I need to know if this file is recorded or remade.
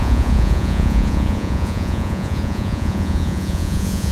remade